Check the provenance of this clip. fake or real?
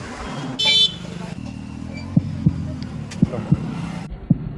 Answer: real